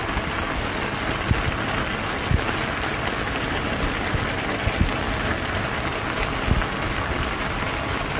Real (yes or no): yes